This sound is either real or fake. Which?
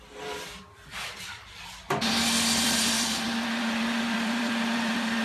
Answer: fake